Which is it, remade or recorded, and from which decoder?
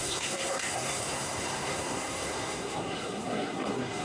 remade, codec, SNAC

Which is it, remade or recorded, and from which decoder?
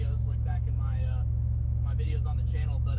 remade, autoencoder, DAC-VAE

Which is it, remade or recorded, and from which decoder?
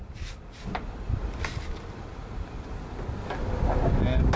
recorded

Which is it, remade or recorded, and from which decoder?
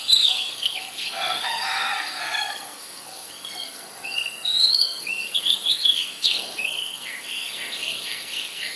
remade, codec, SNAC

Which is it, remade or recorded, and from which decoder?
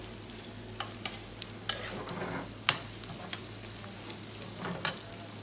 recorded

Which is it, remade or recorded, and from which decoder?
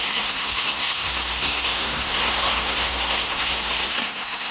remade, codec, SNAC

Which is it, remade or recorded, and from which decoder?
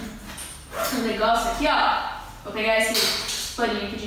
recorded